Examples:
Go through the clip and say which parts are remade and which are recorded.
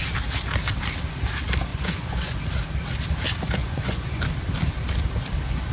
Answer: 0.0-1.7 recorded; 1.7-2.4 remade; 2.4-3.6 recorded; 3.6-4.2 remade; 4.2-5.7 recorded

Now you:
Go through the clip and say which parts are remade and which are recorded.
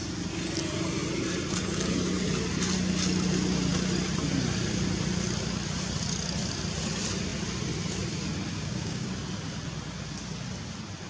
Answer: 0.0-8.5 recorded; 8.5-9.1 remade; 9.1-11.1 recorded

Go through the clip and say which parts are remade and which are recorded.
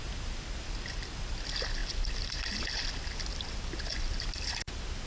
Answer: 0.0-5.1 recorded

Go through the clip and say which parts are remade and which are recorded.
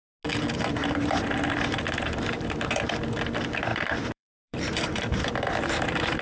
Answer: 0.0-0.8 recorded; 0.8-2.9 remade; 2.9-3.7 recorded; 3.7-6.2 remade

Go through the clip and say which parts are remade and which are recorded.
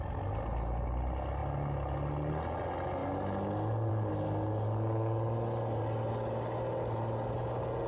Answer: 0.0-7.9 recorded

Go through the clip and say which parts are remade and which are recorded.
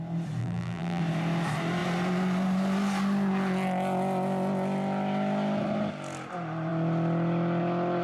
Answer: 0.0-0.4 recorded; 0.4-1.0 remade; 1.0-8.0 recorded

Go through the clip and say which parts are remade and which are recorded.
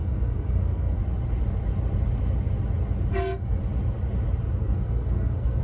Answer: 0.0-1.0 remade; 1.0-3.1 recorded; 3.1-3.6 remade; 3.6-4.6 recorded; 4.6-5.6 remade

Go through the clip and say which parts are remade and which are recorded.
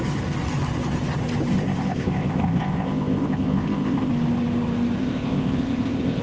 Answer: 0.0-1.5 recorded; 1.5-4.1 remade; 4.1-5.0 recorded; 5.0-6.2 remade